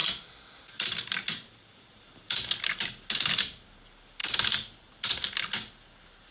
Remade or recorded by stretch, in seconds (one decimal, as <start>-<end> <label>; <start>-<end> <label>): 0.0-6.3 recorded